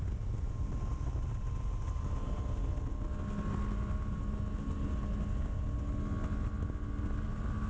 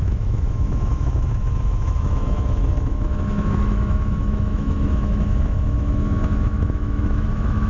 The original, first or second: first